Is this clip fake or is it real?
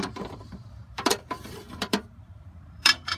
fake